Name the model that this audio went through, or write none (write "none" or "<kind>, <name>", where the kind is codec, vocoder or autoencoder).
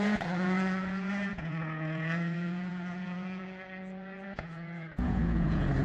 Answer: vocoder, Vocos